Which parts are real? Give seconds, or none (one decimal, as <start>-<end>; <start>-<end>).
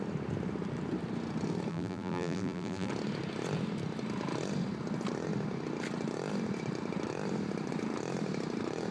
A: 0.0-1.7; 2.9-8.9